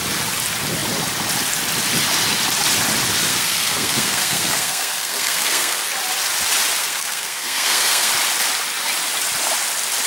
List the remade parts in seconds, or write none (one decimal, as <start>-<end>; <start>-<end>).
3.3-5.9; 6.8-8.1